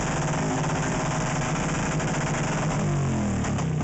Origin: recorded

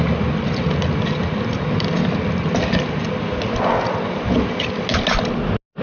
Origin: recorded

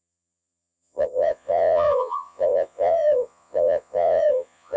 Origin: remade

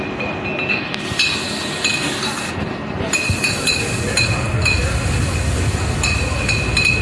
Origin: recorded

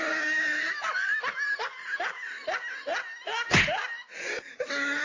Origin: recorded